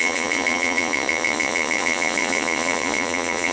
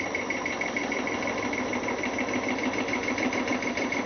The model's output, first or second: first